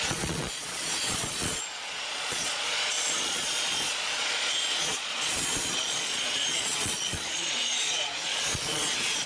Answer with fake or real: fake